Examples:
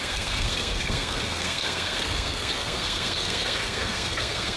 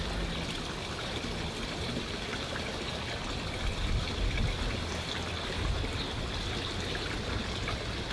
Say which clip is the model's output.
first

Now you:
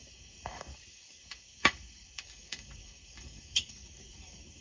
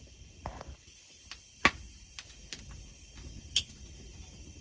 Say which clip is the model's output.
first